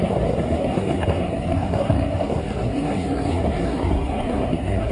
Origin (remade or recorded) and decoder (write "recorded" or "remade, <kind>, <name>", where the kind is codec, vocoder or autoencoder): remade, codec, SNAC